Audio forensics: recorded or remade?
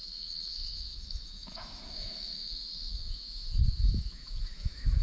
remade